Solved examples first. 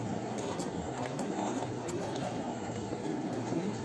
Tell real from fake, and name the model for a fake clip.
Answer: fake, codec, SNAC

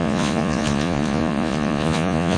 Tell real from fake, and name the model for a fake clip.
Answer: fake, vocoder, Vocos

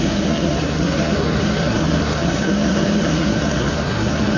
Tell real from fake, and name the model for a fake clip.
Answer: fake, codec, SNAC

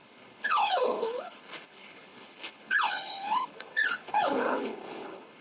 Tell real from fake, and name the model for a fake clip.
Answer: fake, codec, HILCodec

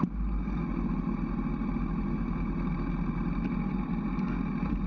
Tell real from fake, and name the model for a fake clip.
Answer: real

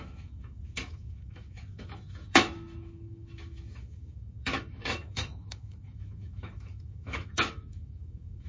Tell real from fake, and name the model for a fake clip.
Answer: fake, autoencoder, DAC-VAE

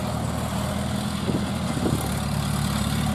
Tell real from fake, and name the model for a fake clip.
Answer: real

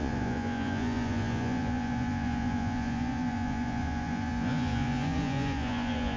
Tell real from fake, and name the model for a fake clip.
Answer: fake, vocoder, Vocos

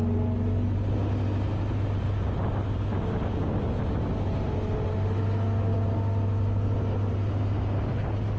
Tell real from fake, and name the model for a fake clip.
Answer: real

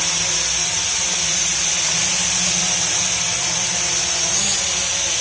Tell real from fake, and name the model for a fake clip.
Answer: real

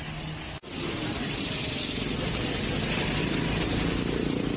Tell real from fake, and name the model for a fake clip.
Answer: real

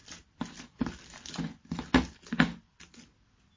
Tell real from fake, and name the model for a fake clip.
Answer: real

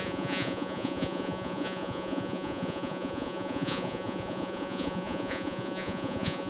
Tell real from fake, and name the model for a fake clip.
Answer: fake, vocoder, Vocos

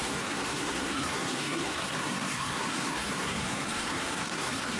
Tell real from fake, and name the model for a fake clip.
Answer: fake, codec, SNAC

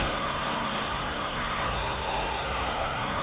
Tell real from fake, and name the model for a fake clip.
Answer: fake, codec, SNAC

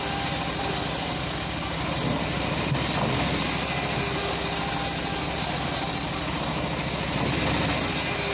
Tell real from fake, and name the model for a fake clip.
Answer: real